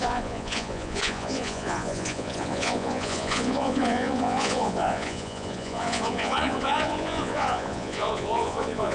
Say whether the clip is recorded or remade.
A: remade